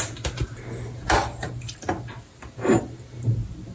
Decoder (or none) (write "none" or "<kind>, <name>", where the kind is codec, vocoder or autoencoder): none